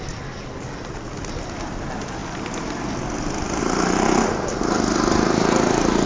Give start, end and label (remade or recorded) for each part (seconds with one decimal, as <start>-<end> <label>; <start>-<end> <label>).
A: 0.0-6.1 recorded